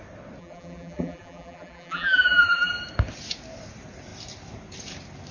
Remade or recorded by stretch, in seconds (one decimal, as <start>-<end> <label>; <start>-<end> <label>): 0.0-0.4 recorded; 0.4-2.7 remade; 2.7-5.3 recorded